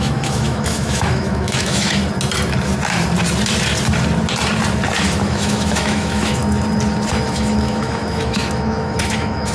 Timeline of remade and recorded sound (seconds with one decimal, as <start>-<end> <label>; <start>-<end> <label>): 0.0-2.0 remade; 2.0-5.0 recorded; 5.0-6.4 remade; 6.4-7.1 recorded; 7.1-9.5 remade